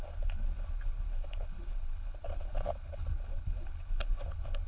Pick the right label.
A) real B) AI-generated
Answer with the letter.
B